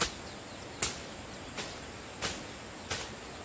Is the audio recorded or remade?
recorded